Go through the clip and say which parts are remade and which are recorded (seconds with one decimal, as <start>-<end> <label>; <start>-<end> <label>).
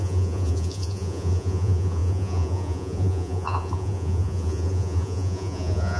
0.0-6.0 remade